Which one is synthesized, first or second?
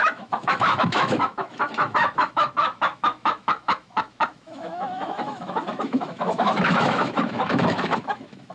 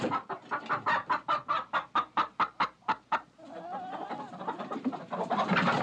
first